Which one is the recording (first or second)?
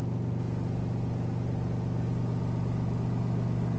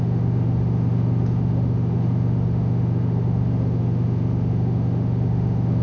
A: first